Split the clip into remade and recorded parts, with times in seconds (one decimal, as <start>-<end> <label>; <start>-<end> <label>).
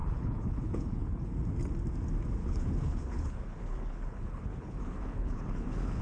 0.0-1.3 remade; 1.3-2.4 recorded; 2.4-6.0 remade